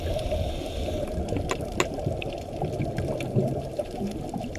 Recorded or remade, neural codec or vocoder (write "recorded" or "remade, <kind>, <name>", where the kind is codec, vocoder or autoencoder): remade, vocoder, BigVGAN v2